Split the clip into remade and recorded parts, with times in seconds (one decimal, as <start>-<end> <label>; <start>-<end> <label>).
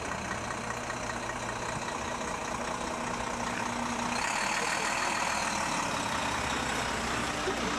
0.0-7.8 recorded